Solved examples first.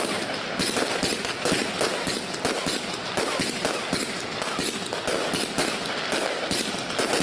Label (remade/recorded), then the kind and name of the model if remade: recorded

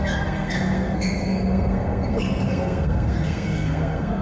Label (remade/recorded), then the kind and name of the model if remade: remade, codec, SNAC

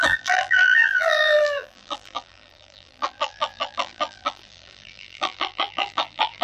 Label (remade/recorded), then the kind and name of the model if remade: remade, vocoder, BigVGAN v2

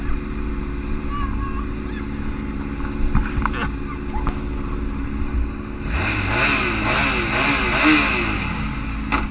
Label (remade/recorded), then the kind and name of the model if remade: recorded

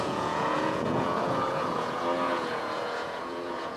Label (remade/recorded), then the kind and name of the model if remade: remade, vocoder, Vocos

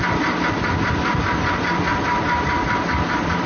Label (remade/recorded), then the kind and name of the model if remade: recorded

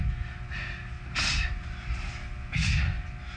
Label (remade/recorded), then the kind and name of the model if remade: recorded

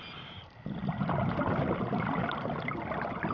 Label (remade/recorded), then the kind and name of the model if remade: recorded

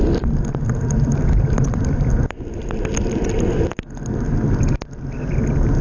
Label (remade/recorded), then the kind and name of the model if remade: recorded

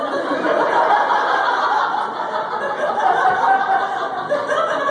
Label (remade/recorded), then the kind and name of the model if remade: recorded